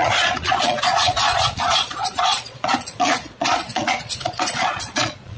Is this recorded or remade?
remade